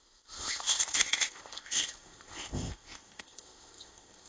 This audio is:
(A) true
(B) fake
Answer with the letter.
B